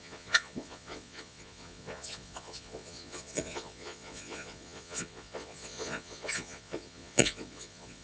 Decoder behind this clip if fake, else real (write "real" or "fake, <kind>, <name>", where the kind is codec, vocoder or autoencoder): fake, vocoder, Vocos